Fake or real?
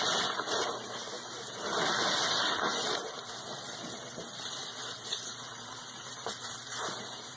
fake